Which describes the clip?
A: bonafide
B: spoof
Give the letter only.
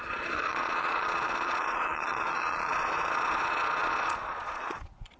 B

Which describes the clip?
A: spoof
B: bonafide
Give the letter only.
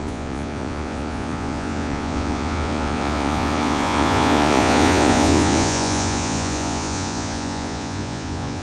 A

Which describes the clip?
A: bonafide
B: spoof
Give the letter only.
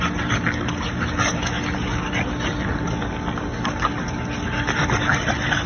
A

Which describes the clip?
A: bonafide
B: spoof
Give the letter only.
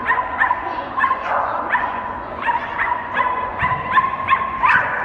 B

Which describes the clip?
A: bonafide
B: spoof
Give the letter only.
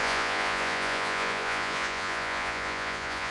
B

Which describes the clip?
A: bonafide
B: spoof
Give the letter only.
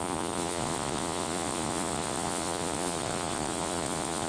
B